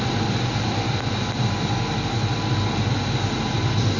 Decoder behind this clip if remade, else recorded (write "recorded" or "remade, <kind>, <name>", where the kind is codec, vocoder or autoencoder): recorded